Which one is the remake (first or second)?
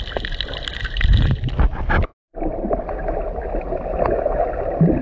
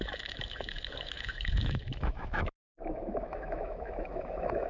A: second